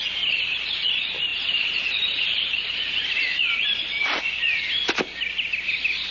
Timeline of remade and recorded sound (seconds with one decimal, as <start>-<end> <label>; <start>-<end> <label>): 0.0-1.3 recorded; 1.3-4.7 remade; 4.7-6.1 recorded